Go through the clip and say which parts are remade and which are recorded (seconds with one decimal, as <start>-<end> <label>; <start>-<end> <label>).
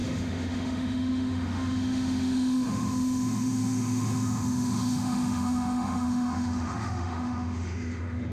0.0-8.3 remade